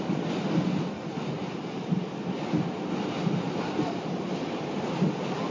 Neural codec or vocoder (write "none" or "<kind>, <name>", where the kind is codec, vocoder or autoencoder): none